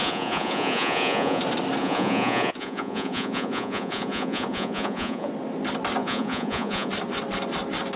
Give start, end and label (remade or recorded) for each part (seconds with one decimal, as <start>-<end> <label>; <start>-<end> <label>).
0.0-1.4 remade; 1.4-1.8 recorded; 1.8-5.3 remade; 5.3-6.0 recorded; 6.0-6.9 remade; 6.9-8.0 recorded